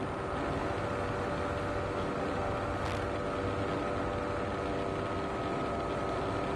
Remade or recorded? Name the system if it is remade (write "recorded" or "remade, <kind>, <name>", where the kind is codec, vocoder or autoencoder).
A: recorded